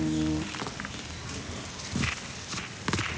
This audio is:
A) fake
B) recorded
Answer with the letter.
B